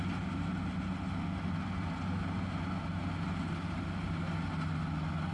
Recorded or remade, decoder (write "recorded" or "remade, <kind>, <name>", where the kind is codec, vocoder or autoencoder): recorded